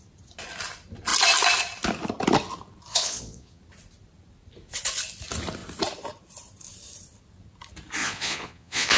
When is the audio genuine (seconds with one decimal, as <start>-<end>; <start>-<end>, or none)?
0.0-2.9; 3.6-8.0